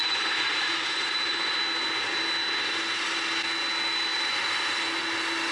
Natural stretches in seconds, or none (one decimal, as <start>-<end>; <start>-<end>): 1.6-5.5